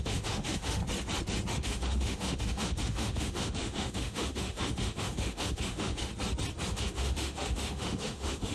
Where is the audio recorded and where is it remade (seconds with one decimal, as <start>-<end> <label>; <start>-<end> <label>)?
0.0-0.8 remade; 0.8-1.5 recorded; 1.5-6.1 remade; 6.1-6.7 recorded; 6.7-8.5 remade